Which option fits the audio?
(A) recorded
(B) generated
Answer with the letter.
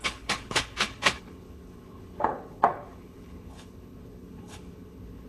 B